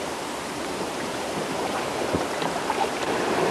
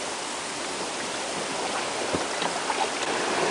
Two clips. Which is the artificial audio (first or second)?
first